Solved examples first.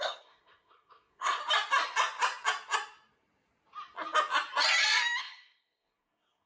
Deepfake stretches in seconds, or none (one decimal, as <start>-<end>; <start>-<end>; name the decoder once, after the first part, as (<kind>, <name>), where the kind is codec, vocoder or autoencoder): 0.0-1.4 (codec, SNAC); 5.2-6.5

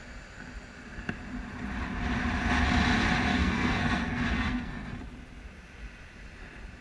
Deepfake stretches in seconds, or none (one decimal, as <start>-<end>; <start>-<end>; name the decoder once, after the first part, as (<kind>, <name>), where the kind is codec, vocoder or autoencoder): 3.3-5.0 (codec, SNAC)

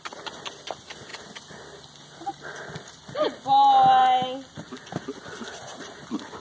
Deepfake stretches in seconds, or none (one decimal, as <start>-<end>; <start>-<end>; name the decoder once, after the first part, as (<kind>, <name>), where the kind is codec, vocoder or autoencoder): none

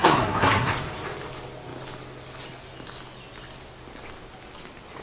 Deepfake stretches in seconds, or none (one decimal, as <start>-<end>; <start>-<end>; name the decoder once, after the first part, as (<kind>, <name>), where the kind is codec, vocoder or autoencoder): 0.0-0.7 (codec, SNAC)

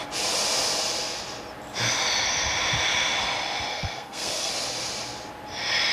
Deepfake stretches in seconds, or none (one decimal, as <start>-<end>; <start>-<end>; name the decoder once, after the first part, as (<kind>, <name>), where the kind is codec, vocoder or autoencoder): 3.7-4.5 (codec, SNAC)

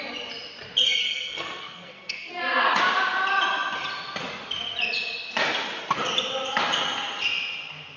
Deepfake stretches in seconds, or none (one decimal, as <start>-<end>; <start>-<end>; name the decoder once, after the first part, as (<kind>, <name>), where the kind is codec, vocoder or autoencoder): 1.0-2.4 (codec, SNAC)

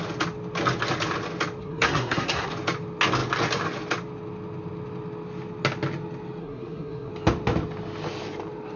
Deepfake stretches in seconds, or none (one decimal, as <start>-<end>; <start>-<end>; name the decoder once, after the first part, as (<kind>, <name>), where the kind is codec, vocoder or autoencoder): 1.6-2.5 (codec, SNAC); 6.4-7.1